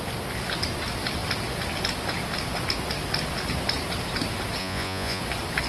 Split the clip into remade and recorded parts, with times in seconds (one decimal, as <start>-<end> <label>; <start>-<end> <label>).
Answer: 0.0-4.6 recorded; 4.6-5.2 remade; 5.2-5.7 recorded

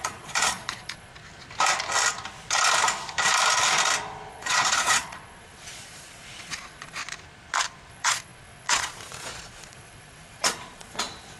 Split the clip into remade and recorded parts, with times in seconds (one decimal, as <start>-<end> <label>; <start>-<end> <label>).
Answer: 0.0-1.1 remade; 1.1-4.3 recorded; 4.3-7.0 remade; 7.0-7.9 recorded; 7.9-11.4 remade

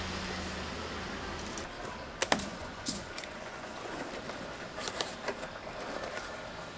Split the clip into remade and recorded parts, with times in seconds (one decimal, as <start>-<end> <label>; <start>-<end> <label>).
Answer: 0.0-2.5 recorded; 2.5-4.0 remade; 4.0-6.8 recorded

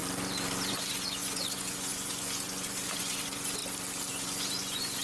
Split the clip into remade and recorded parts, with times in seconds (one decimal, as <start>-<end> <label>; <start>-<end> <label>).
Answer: 0.0-0.7 recorded; 0.7-3.6 remade; 3.6-4.1 recorded; 4.1-5.0 remade